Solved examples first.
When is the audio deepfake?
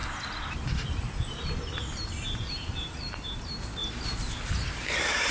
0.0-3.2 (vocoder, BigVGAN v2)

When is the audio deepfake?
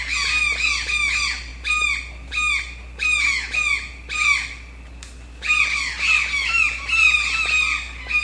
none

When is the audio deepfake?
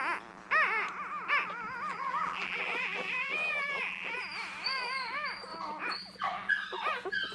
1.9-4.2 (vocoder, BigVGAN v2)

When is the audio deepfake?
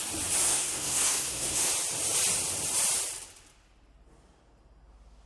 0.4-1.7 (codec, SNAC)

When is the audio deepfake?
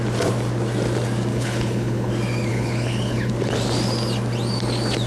1.3-2.1 (codec, HILCodec); 2.5-3.3